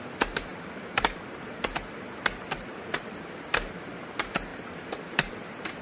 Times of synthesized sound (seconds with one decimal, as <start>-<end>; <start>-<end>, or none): 0.0-5.8